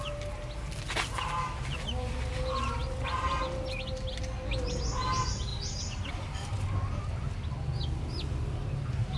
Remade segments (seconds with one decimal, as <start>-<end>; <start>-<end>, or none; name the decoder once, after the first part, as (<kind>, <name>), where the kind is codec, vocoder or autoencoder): none